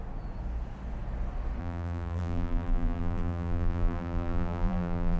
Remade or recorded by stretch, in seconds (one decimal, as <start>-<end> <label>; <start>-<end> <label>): 0.0-1.6 recorded; 1.6-5.2 remade